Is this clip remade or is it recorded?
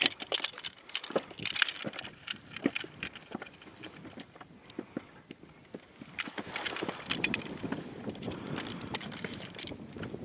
remade